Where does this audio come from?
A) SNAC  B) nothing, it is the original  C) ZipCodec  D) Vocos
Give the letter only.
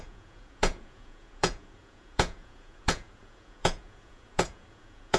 D